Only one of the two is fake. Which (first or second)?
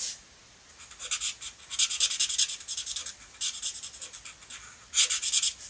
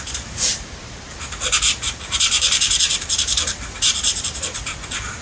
second